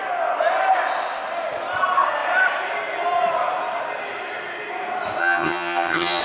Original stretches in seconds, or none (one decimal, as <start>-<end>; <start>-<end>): 0.0-5.2